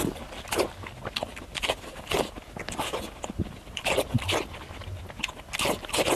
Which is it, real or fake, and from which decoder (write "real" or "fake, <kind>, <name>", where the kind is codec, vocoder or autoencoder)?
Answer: real